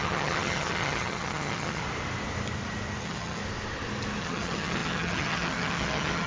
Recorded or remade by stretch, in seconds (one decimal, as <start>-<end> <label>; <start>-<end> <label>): 0.0-1.8 remade; 1.8-3.0 recorded; 3.0-3.4 remade; 3.4-4.2 recorded; 4.2-6.3 remade